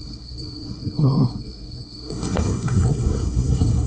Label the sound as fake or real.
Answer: fake